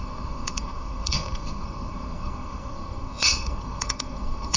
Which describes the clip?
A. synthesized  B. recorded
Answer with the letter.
A